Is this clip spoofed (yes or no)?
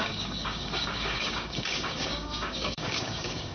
yes